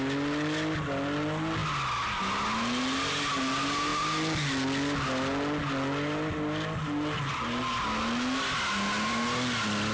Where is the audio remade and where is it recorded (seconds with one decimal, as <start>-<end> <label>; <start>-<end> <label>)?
0.0-9.9 recorded